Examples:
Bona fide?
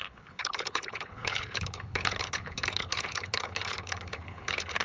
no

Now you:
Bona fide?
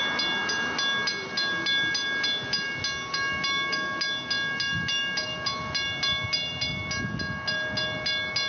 yes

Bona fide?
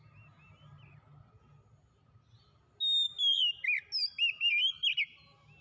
yes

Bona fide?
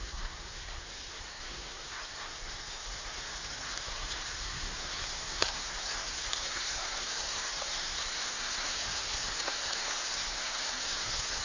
no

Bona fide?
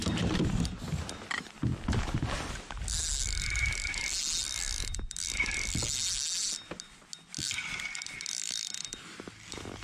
yes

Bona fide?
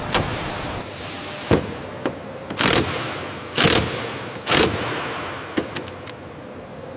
yes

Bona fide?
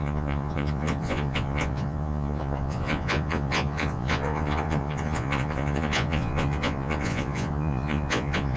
no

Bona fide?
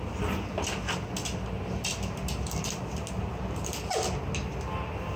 yes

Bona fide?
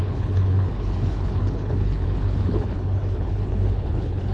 no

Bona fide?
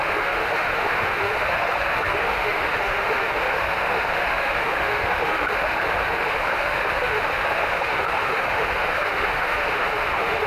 no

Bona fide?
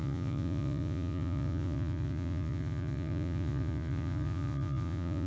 no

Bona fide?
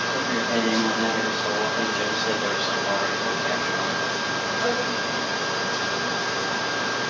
yes